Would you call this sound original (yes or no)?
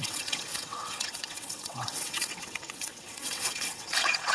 no